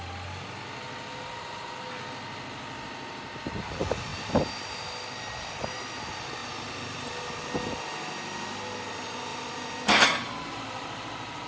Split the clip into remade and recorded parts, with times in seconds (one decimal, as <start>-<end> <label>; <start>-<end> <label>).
0.0-6.4 recorded; 6.4-7.4 remade; 7.4-9.3 recorded; 9.3-11.5 remade